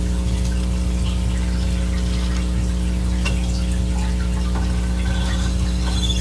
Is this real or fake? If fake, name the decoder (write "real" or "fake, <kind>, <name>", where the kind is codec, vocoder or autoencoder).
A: real